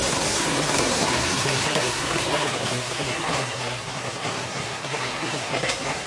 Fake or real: fake